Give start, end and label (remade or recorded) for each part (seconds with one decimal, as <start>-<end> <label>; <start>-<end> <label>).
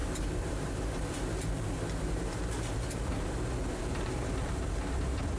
0.0-3.2 remade; 3.2-3.8 recorded; 3.8-4.6 remade; 4.6-5.4 recorded